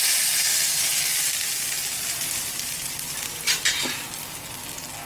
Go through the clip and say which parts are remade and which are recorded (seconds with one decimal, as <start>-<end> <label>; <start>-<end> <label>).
0.0-5.1 recorded